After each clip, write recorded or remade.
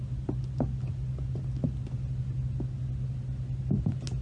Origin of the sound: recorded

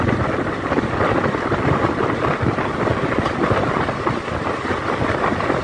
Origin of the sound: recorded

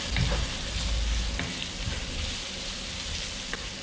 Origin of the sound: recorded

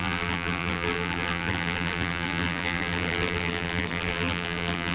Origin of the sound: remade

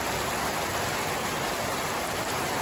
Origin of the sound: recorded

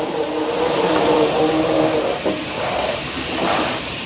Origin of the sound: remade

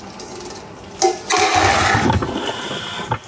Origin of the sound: recorded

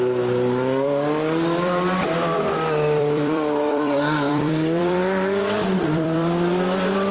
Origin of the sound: remade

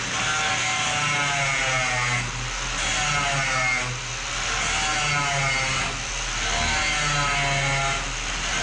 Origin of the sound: recorded